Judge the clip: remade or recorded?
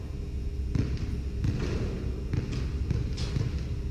recorded